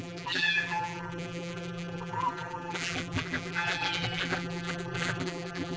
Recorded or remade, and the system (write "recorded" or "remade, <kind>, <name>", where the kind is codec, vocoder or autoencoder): remade, vocoder, BigVGAN v2